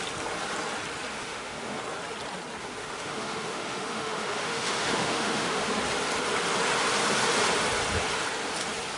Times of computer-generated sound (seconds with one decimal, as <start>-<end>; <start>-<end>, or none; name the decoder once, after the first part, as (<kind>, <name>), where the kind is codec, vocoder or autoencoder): 1.1-1.8 (autoencoder, DAC-VAE); 2.6-5.7